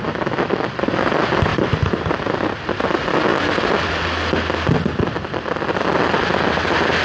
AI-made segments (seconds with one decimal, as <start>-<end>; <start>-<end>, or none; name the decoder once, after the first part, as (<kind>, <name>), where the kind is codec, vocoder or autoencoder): none